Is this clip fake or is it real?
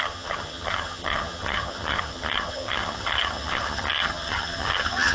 fake